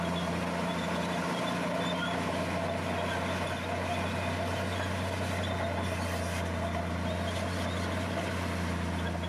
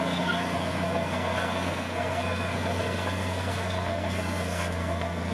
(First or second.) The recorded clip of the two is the first